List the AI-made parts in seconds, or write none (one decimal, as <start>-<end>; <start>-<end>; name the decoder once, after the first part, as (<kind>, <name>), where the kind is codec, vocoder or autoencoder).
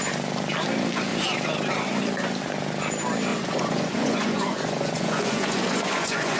3.3-6.4 (vocoder, Vocos)